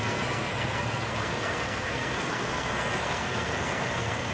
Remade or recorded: remade